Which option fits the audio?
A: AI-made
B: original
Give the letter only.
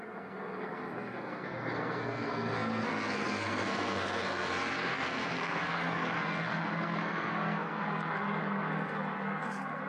A